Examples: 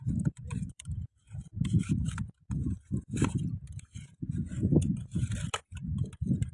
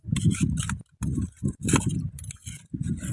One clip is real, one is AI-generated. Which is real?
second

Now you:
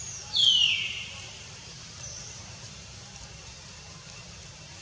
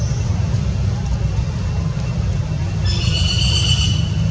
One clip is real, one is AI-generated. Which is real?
second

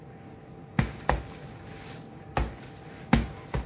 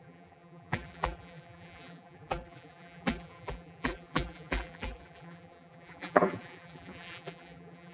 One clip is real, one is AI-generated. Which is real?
first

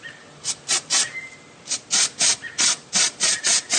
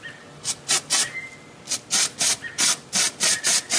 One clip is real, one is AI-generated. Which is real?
second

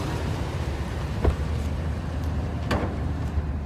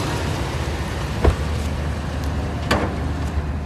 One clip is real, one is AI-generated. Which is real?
second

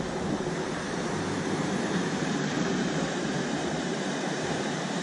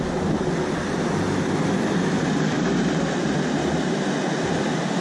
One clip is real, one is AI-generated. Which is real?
second